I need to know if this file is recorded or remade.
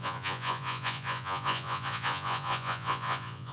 remade